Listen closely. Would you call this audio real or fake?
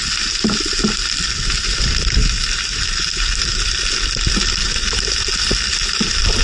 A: fake